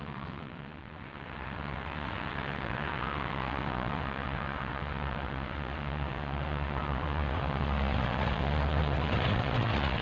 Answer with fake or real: fake